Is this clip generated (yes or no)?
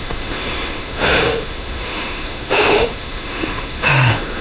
yes